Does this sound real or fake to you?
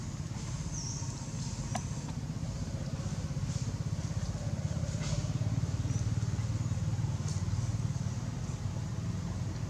real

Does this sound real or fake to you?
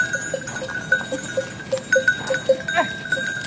real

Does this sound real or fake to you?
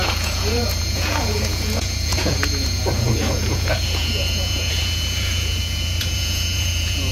fake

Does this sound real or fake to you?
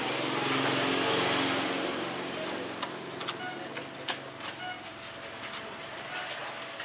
real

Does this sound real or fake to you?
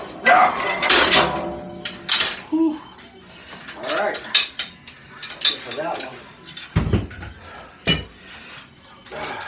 real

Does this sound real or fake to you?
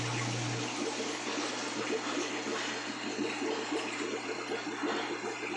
real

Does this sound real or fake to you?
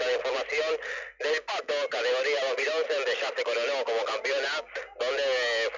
real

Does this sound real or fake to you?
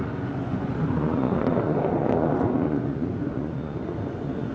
fake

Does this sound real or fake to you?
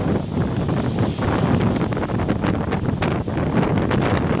real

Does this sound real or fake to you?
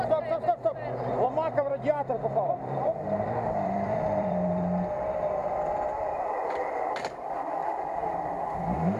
fake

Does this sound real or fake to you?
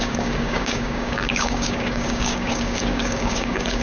fake